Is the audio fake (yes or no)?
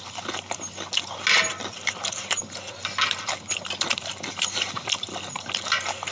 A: no